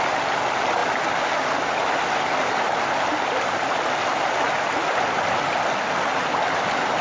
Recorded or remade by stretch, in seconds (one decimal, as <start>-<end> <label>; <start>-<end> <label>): 0.0-7.0 recorded

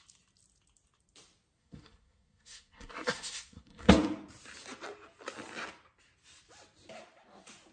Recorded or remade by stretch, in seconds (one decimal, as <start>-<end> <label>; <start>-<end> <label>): 0.0-1.6 recorded; 1.6-3.9 remade; 3.9-7.7 recorded

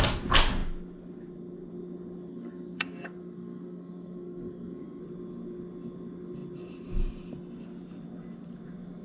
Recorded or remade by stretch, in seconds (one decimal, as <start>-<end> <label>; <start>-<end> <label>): 0.0-2.3 recorded; 2.3-5.0 remade; 5.0-9.0 recorded

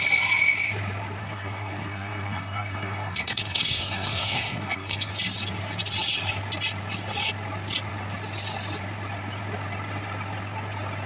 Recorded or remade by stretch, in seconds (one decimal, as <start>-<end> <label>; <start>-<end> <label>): 0.0-1.2 recorded; 1.2-5.1 remade; 5.1-11.1 recorded